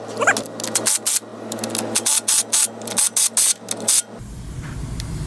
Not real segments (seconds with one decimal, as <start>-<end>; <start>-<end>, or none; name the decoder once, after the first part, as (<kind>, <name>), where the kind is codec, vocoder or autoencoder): none